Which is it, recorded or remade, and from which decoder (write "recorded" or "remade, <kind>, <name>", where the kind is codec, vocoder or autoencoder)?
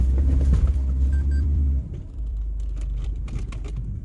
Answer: remade, vocoder, BigVGAN v2